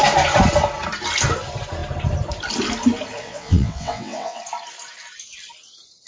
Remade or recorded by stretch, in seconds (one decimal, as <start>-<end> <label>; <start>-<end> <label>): 0.0-3.2 recorded; 3.2-4.4 remade; 4.4-6.1 recorded